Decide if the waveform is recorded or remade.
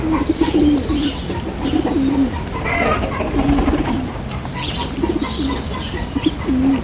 remade